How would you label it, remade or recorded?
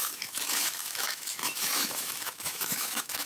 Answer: remade